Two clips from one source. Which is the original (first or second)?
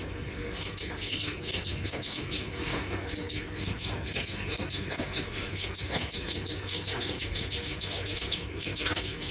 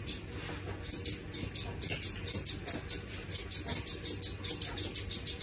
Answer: second